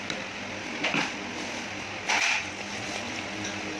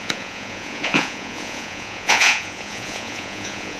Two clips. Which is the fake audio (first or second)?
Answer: second